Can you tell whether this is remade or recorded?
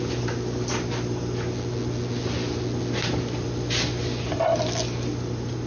recorded